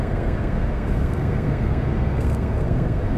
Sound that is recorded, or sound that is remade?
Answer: remade